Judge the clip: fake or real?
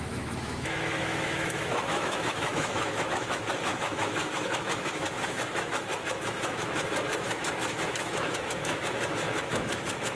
fake